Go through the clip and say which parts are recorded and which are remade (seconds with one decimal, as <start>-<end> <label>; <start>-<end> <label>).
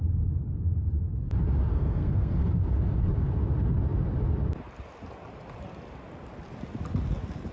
0.0-1.7 recorded; 1.7-2.5 remade; 2.5-7.5 recorded